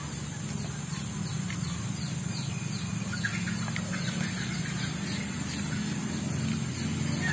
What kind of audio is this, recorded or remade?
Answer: recorded